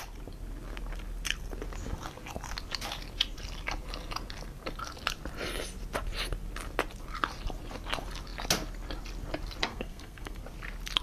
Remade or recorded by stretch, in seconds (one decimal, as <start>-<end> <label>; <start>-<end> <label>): 0.0-9.7 recorded; 9.7-10.4 remade; 10.4-11.0 recorded